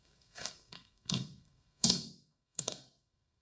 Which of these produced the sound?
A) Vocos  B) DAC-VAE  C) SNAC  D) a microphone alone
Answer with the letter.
C